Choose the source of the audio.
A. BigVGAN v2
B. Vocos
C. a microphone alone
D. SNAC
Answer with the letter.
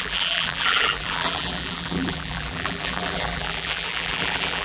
A